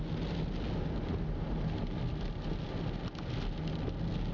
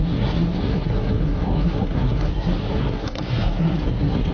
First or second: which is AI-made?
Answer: second